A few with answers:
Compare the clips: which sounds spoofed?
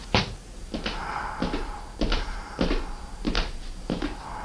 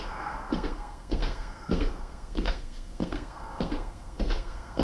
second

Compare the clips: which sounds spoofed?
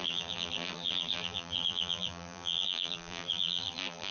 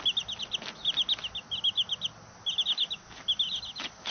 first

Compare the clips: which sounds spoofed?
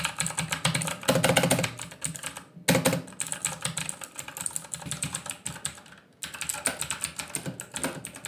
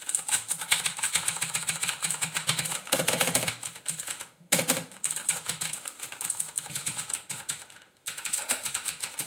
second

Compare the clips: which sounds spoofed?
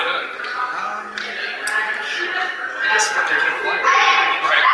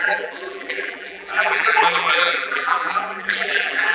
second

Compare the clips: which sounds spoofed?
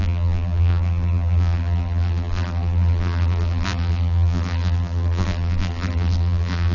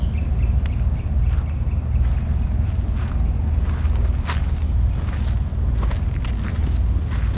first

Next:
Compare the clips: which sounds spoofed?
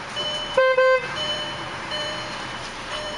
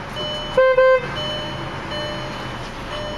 first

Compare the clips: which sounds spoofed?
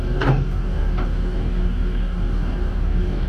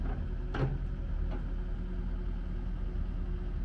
first